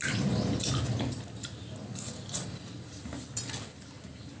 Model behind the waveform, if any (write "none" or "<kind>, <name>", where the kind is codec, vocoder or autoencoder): none